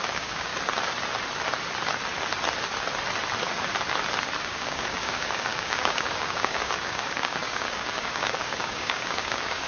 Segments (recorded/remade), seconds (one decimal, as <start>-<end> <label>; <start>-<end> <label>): 0.0-0.5 remade; 0.5-4.4 recorded; 4.4-9.7 remade